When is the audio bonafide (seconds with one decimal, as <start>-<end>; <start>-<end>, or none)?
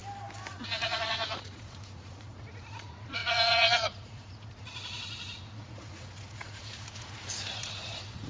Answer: 0.0-0.5